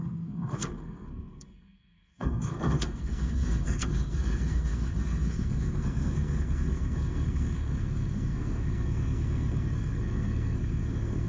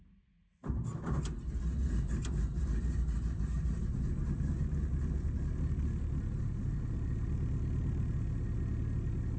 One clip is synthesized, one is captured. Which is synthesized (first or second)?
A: first